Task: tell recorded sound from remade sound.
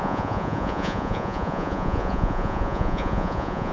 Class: remade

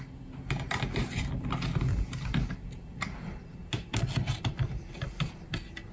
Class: recorded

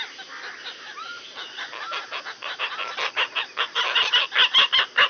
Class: recorded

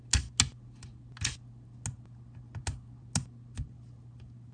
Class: recorded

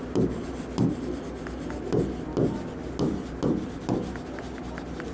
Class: recorded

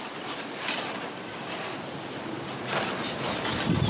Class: recorded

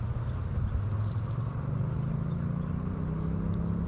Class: recorded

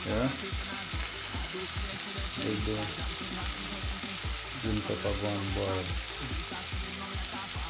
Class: recorded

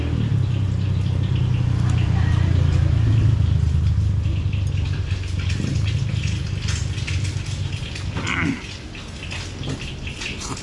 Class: recorded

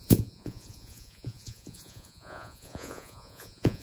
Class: remade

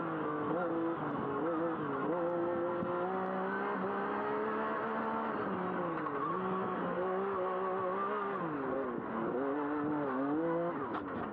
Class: recorded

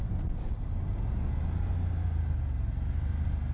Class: recorded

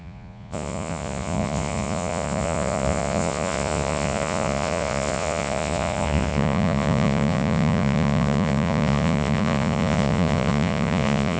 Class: remade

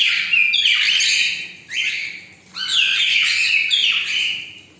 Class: recorded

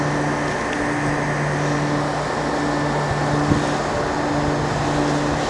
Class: recorded